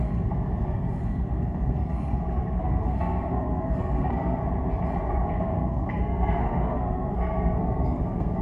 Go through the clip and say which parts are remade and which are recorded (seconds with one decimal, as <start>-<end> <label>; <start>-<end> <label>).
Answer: 0.0-4.4 remade; 4.4-5.1 recorded; 5.1-8.4 remade